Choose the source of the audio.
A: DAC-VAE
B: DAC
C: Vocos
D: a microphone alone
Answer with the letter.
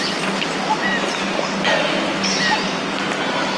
D